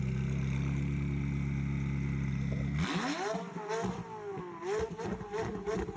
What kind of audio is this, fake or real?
real